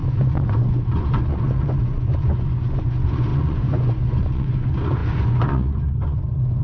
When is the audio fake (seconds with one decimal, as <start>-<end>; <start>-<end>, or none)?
0.0-6.6